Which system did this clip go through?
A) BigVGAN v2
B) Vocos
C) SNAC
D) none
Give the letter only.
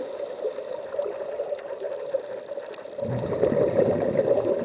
D